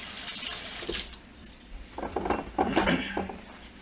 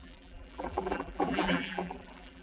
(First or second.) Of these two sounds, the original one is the first